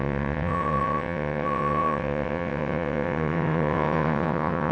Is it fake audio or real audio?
fake